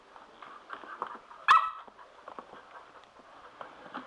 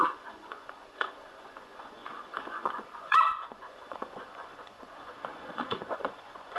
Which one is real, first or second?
first